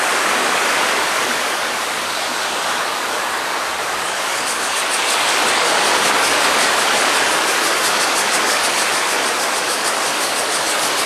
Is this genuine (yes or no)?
no